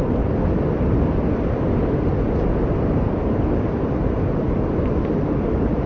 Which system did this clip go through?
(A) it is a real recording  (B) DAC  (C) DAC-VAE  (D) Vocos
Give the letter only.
A